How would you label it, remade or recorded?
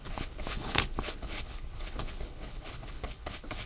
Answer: remade